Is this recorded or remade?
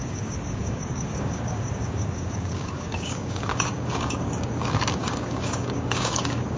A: remade